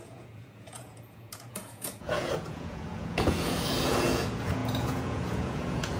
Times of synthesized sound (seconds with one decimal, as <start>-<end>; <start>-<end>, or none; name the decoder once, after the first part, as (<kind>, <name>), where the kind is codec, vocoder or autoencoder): 0.0-6.0 (vocoder, Vocos)